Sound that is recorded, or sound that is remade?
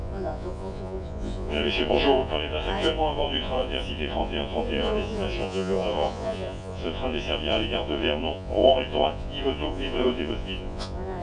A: remade